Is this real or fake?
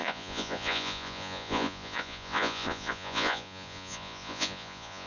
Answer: fake